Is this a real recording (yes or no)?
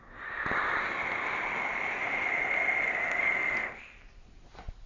yes